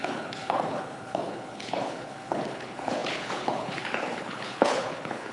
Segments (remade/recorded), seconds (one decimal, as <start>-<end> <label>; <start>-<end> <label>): 0.0-5.3 remade